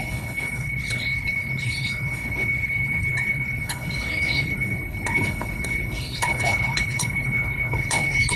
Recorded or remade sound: remade